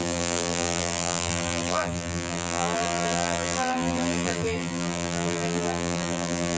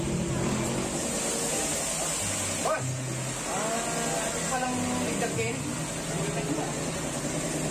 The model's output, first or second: first